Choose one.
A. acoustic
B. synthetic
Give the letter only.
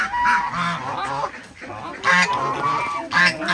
A